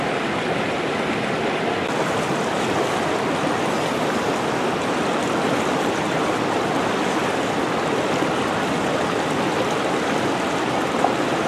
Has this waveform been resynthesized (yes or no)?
no